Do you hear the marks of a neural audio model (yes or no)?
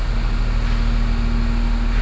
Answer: no